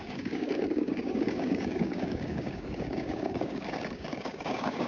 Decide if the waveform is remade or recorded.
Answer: remade